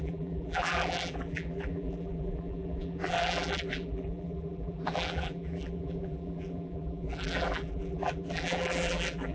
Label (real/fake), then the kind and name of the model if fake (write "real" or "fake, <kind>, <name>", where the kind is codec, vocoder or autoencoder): fake, vocoder, BigVGAN v2